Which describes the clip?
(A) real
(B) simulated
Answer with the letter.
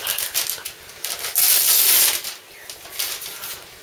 A